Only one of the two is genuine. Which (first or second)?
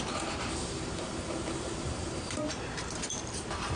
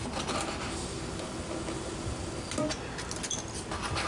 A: second